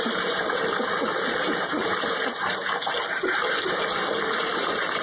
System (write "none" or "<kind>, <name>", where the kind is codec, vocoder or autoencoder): vocoder, BigVGAN v2